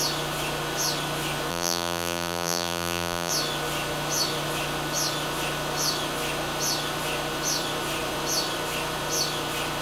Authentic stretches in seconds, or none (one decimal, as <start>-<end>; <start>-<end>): 0.0-1.5; 3.3-9.8